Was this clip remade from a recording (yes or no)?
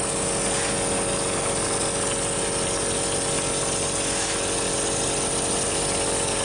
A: no